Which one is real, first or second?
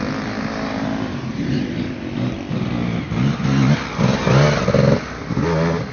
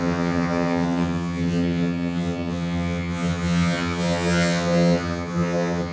first